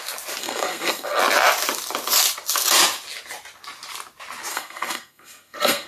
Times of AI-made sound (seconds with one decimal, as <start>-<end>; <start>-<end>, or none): 0.4-1.2; 4.5-5.9